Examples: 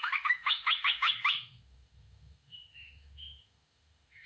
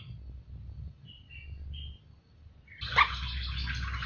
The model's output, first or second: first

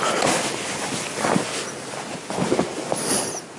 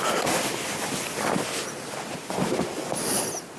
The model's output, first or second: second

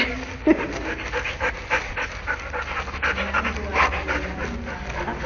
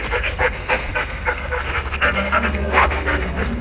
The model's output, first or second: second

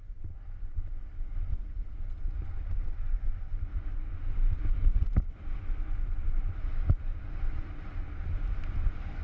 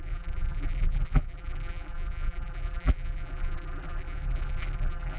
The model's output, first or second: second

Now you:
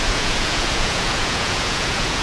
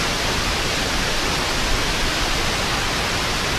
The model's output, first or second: first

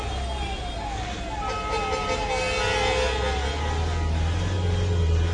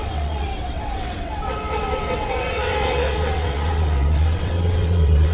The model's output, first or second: second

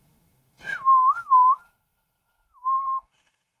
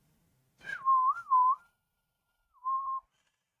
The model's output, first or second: first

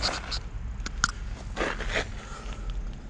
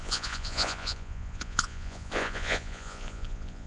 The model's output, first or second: second